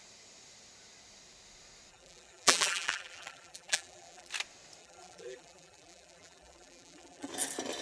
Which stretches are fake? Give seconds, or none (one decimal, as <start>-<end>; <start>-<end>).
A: 1.9-4.3; 4.8-7.3